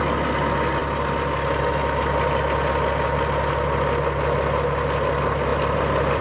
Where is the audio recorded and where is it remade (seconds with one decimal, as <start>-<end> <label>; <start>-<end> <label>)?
0.0-0.8 recorded; 0.8-1.6 remade; 1.6-5.5 recorded; 5.5-6.2 remade